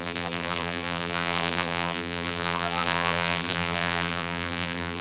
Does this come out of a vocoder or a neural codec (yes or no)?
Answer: yes